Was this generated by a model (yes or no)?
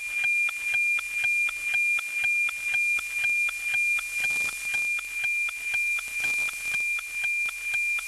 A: no